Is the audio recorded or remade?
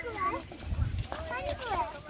recorded